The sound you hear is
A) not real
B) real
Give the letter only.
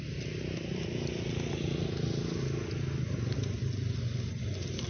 B